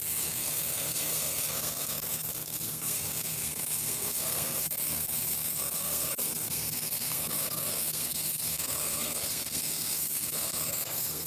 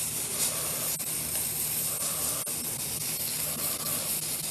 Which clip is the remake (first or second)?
first